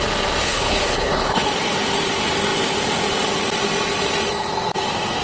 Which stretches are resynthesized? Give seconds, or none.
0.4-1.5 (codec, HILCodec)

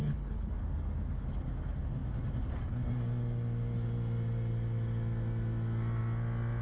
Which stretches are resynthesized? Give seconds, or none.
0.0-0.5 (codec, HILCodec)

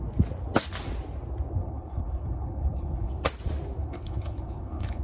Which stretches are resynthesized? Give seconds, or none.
1.6-3.2 (codec, HILCodec); 3.8-5.0